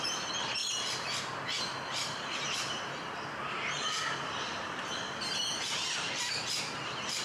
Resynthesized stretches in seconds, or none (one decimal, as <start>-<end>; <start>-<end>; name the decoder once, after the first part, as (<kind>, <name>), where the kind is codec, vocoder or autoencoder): 0.0-0.6 (vocoder, BigVGAN v2); 3.5-7.2